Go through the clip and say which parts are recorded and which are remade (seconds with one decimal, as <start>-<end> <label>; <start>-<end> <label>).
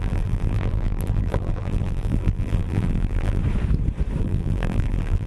0.0-3.4 remade; 3.4-4.2 recorded; 4.2-5.3 remade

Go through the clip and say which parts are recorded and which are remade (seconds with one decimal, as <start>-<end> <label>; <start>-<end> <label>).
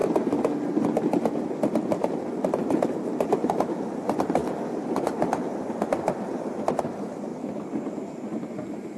0.0-2.5 recorded; 2.5-4.4 remade; 4.4-6.8 recorded; 6.8-7.3 remade; 7.3-8.3 recorded; 8.3-9.0 remade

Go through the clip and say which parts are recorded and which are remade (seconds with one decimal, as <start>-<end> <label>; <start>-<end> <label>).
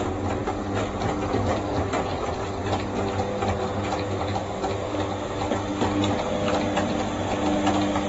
0.0-8.1 recorded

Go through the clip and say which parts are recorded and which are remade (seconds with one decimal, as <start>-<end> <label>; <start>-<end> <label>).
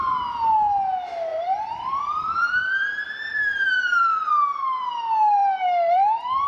0.0-1.3 recorded; 1.3-4.3 remade; 4.3-5.4 recorded; 5.4-6.5 remade